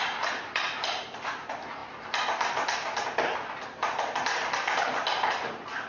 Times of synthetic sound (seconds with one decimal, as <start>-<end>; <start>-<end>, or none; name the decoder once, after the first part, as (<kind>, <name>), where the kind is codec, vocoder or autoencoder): none